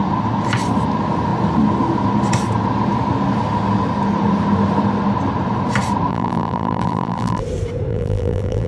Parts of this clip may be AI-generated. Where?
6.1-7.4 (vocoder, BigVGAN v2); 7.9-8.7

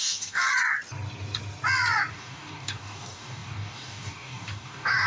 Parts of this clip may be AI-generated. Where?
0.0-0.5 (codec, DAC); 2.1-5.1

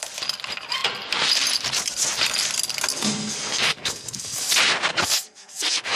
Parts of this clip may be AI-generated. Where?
2.9-4.5 (codec, SNAC); 4.9-6.0